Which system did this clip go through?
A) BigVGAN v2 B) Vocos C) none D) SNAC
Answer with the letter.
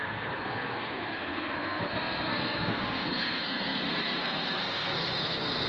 D